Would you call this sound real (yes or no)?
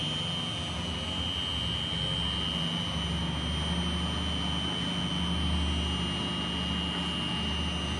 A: yes